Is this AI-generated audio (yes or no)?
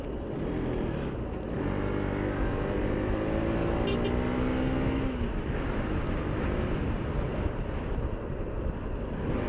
no